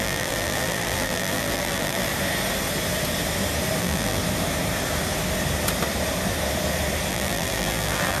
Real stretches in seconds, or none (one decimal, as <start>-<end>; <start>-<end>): 2.1-3.8; 4.2-7.1